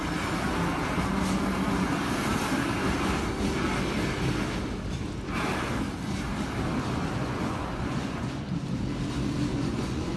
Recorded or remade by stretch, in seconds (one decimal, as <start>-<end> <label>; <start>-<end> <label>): 0.0-7.2 recorded; 7.2-8.5 remade; 8.5-9.5 recorded; 9.5-10.2 remade